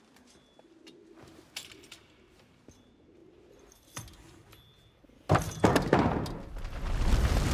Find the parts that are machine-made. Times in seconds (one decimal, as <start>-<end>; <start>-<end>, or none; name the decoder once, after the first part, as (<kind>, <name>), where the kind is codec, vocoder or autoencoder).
none